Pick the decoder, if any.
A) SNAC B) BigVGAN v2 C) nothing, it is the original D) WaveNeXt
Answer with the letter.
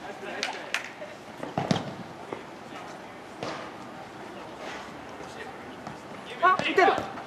C